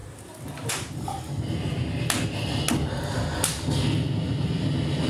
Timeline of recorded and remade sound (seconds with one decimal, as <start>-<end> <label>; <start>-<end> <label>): 0.0-5.1 recorded